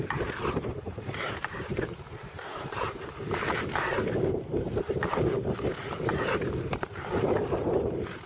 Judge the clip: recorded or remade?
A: remade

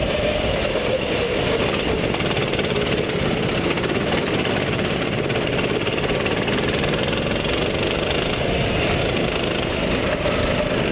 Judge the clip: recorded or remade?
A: recorded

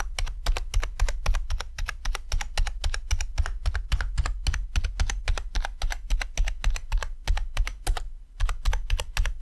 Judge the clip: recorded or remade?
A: recorded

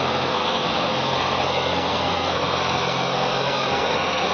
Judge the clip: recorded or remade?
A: remade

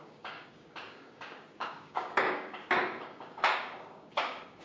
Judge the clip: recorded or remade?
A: remade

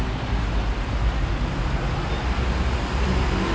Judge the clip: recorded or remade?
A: recorded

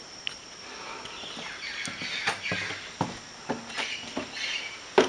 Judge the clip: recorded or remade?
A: recorded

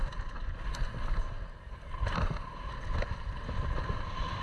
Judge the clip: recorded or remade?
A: recorded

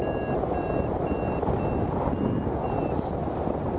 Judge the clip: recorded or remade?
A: recorded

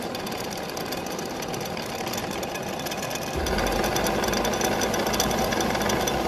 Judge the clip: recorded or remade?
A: recorded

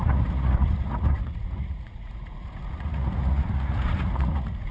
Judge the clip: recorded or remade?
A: remade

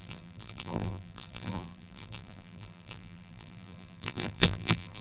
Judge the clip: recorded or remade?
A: remade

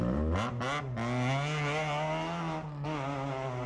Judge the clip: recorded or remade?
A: recorded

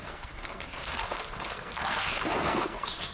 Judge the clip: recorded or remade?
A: remade